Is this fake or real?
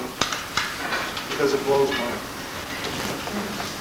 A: fake